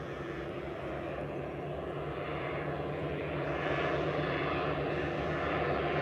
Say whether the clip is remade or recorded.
remade